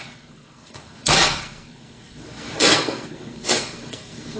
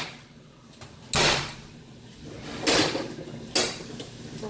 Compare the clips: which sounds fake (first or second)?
first